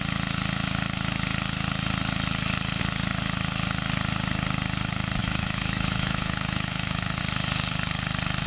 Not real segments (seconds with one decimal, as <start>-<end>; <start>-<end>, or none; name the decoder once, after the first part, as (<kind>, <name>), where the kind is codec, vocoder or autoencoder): 5.2-7.2 (autoencoder, DAC-VAE)